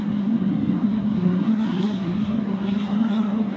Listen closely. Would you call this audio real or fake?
fake